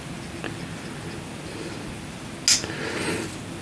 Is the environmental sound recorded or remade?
recorded